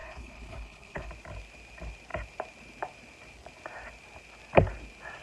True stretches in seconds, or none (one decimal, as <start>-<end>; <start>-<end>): 1.1-5.2